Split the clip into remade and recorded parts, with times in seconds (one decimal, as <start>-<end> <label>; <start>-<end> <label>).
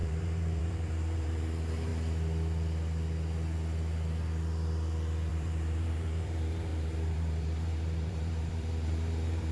0.0-1.9 remade; 1.9-5.3 recorded; 5.3-9.5 remade